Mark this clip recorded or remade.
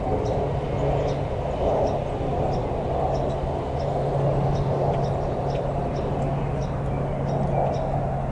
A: recorded